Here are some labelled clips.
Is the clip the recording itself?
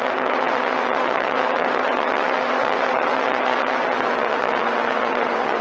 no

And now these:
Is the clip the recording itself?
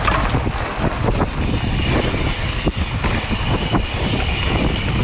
yes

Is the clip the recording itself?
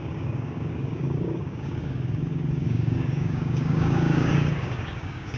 no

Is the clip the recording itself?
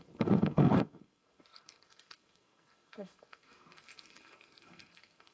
no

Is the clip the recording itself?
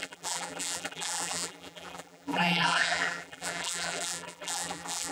no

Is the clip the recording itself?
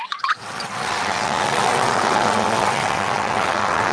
no